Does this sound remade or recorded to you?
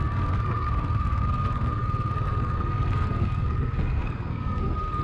remade